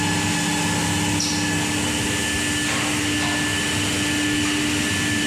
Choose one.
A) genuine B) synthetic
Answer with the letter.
A